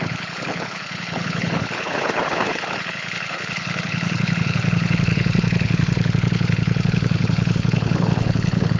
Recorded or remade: remade